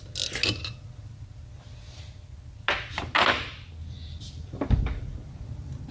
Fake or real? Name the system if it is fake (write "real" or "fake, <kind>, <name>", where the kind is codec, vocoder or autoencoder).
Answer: real